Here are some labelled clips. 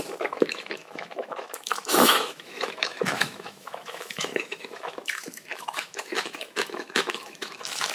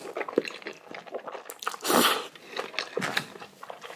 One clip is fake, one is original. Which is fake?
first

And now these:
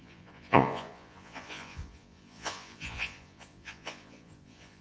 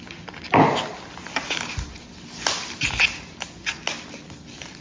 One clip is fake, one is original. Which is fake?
first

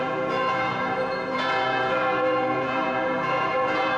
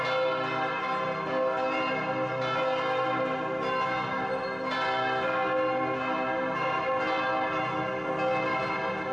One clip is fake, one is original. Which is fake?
first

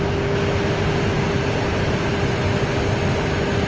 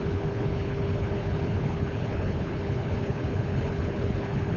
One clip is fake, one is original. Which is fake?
second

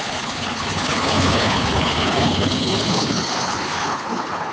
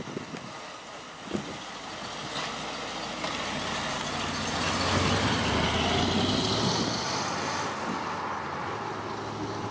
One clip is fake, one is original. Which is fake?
first